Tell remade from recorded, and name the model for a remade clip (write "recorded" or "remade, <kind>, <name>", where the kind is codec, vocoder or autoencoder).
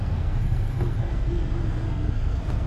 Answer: remade, codec, SNAC